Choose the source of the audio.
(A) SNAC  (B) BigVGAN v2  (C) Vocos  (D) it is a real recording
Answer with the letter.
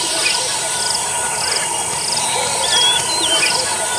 D